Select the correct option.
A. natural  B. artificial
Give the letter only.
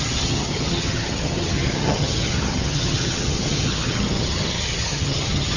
B